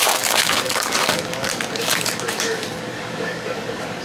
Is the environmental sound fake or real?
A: fake